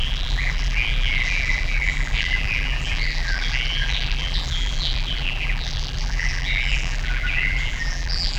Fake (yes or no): yes